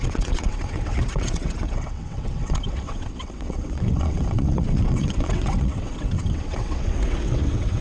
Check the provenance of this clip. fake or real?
fake